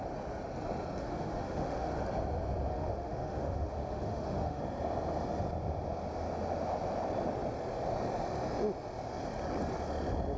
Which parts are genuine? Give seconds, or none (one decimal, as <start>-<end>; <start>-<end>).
0.0-1.0; 1.9-2.7; 4.6-10.4